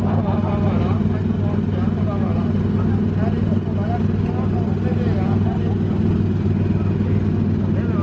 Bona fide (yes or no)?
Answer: yes